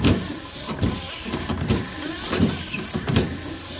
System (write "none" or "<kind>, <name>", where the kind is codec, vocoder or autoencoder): none